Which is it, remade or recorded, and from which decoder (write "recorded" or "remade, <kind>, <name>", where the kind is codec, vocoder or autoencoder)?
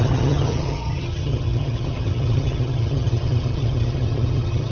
remade, vocoder, HiFi-GAN